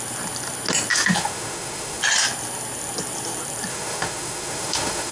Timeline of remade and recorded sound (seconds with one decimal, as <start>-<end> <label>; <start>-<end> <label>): 0.0-0.9 recorded; 0.9-2.0 remade; 2.0-3.7 recorded; 3.7-5.1 remade